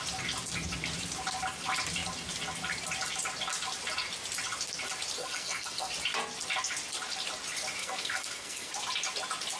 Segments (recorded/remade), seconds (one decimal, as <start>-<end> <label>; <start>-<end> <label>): 0.0-5.2 recorded; 5.2-5.9 remade; 5.9-7.8 recorded; 7.8-8.7 remade; 8.7-9.6 recorded